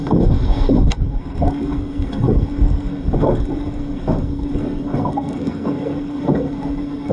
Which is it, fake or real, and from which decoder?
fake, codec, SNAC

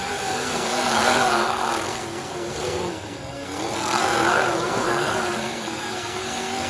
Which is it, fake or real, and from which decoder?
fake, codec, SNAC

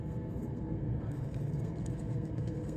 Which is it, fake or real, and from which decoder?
fake, codec, SNAC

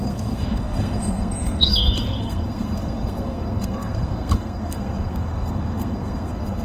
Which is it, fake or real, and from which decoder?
fake, codec, SNAC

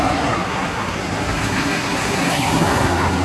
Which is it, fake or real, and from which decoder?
fake, codec, SNAC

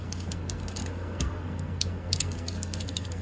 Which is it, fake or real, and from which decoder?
fake, codec, SNAC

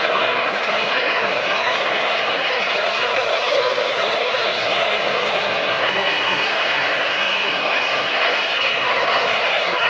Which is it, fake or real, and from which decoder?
fake, codec, SNAC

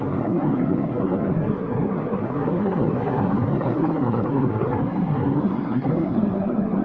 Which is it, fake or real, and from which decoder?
fake, codec, SNAC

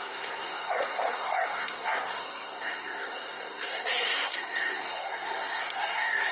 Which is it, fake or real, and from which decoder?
fake, codec, SNAC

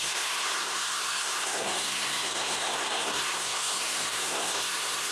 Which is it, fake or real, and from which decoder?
fake, codec, SNAC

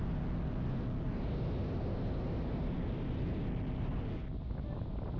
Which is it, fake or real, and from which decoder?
real